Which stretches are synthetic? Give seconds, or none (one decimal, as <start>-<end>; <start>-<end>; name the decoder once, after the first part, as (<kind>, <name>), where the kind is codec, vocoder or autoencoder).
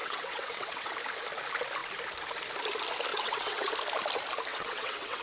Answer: 0.0-0.9 (vocoder, WaveNeXt); 3.1-3.7; 4.5-5.2